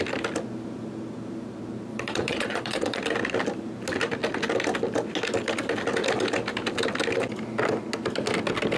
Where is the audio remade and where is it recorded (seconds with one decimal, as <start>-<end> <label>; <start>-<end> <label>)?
0.0-1.9 recorded; 1.9-3.0 remade; 3.0-8.8 recorded